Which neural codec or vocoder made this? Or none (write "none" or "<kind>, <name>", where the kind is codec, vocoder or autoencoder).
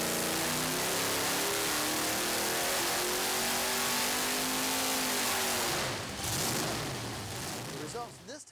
none